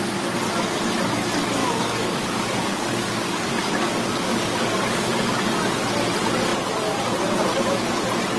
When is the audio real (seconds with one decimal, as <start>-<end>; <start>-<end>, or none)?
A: 0.0-1.6; 5.5-8.4